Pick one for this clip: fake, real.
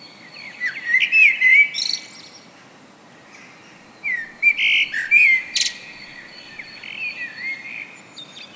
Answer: real